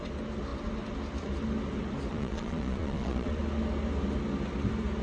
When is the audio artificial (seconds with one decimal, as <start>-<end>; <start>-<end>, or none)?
2.1-3.4